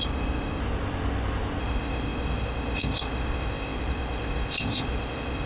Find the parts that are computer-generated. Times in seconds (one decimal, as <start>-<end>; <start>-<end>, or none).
0.0-0.6; 1.6-5.5